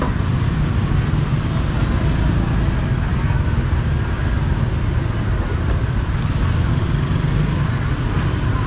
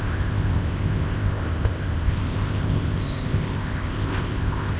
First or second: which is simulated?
second